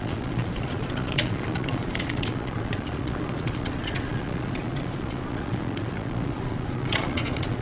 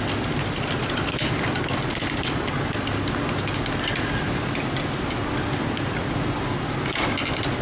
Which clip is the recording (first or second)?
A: second